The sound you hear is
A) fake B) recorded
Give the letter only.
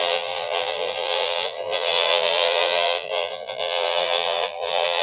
A